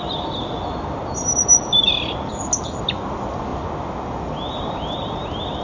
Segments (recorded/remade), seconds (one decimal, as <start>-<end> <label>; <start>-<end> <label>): 0.0-5.6 recorded